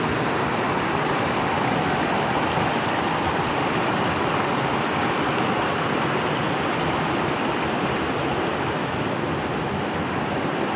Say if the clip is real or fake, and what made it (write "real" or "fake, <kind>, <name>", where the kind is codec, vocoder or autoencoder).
real